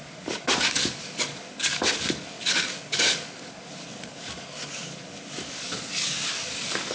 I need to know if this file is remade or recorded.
remade